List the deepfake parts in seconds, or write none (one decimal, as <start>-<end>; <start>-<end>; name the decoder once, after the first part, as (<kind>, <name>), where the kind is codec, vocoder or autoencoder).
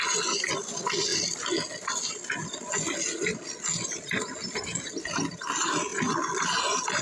1.1-2.1 (vocoder, BigVGAN v2); 5.9-7.0